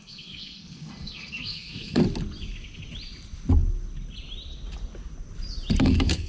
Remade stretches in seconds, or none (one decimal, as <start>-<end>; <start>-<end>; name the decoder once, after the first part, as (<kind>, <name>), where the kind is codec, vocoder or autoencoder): 0.0-2.0 (codec, SNAC); 5.8-6.3